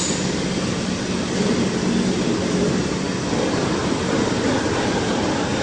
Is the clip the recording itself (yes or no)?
yes